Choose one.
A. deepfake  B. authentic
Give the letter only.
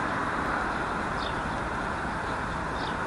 B